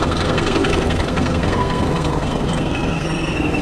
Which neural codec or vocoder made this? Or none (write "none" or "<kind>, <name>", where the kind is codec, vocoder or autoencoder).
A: codec, SNAC